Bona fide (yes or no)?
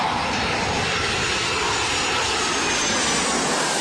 yes